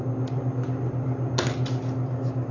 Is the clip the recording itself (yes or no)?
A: yes